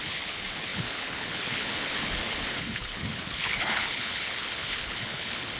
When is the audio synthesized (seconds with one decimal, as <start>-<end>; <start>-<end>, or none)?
0.0-5.6